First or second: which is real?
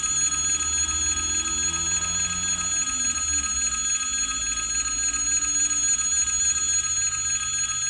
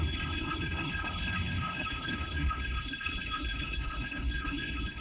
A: first